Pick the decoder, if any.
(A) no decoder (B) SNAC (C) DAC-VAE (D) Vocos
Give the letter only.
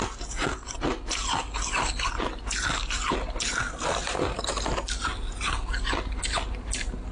A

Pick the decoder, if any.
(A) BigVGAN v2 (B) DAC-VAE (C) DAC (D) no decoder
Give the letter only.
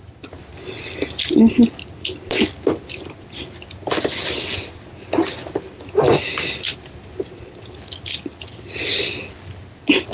D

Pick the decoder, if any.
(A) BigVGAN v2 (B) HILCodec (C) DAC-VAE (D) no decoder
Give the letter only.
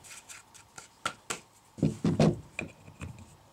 D